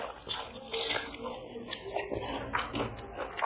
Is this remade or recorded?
recorded